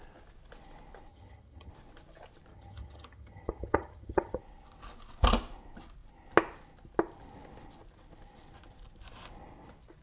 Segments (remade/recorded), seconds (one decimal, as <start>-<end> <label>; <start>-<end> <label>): 0.0-1.1 recorded; 1.1-1.7 remade; 1.7-2.5 recorded; 2.5-4.4 remade; 4.4-10.0 recorded